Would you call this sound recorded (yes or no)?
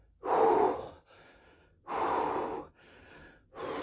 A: yes